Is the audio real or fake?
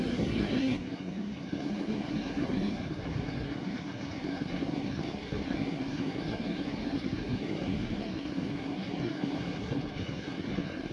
fake